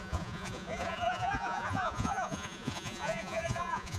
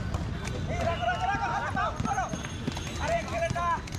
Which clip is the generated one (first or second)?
first